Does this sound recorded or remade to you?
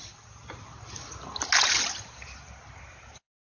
recorded